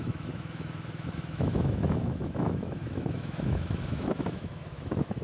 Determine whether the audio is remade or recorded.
remade